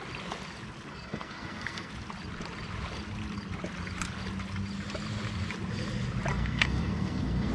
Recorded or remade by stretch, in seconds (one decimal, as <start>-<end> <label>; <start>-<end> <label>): 0.0-0.9 recorded; 0.9-1.9 remade; 1.9-6.3 recorded; 6.3-7.5 remade

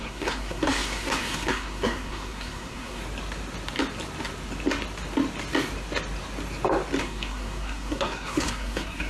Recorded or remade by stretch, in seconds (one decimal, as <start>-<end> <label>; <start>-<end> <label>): 0.0-3.0 remade; 3.0-7.0 recorded; 7.0-9.1 remade

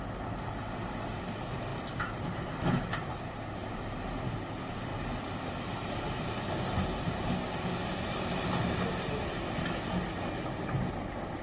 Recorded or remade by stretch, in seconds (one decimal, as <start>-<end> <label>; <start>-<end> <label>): 0.0-8.6 recorded; 8.6-9.2 remade; 9.2-11.4 recorded

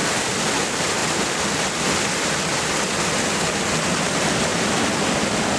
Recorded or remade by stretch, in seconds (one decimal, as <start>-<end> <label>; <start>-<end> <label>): 0.0-5.6 recorded

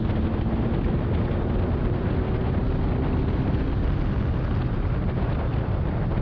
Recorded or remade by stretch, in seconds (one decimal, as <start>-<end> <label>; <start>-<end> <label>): 0.0-6.2 recorded

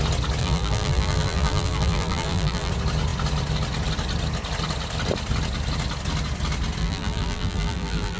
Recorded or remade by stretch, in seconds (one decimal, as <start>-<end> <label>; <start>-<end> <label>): 0.0-0.4 recorded; 0.4-2.7 remade; 2.7-6.8 recorded; 6.8-8.2 remade